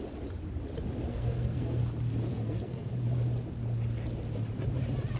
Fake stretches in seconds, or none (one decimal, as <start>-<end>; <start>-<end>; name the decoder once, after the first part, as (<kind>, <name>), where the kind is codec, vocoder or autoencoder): 1.1-1.8 (codec, SNAC); 2.3-2.9